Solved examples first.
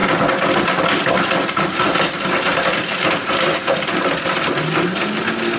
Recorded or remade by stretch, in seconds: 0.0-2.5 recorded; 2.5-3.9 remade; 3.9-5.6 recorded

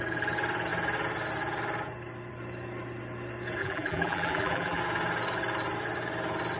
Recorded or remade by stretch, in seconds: 0.0-3.6 recorded; 3.6-4.8 remade; 4.8-6.6 recorded